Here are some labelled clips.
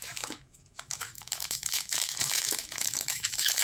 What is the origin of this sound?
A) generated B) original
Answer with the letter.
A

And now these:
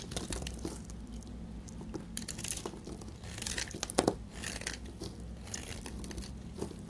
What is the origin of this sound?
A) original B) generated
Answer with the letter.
B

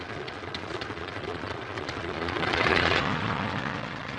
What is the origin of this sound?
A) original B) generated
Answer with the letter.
B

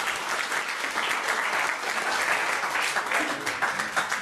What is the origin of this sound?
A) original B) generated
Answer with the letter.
A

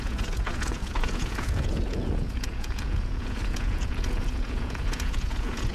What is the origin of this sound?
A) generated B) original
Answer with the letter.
A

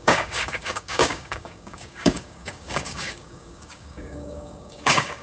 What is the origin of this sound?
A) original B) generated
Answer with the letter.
B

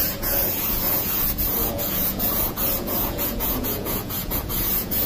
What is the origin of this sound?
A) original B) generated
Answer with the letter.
B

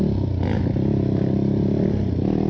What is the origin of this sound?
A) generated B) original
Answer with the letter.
B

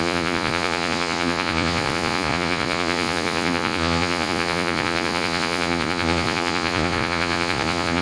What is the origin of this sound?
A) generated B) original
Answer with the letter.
A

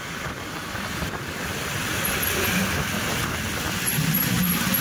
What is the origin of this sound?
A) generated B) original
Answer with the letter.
B